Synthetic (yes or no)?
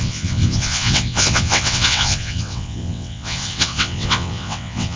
yes